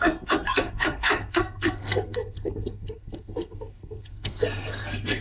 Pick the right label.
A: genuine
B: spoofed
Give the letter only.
B